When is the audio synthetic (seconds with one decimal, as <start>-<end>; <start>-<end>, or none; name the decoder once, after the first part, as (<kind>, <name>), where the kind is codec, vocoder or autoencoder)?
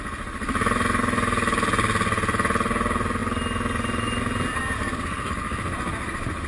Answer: none